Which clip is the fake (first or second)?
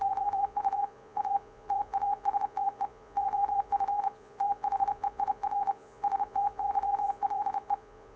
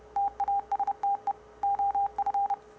first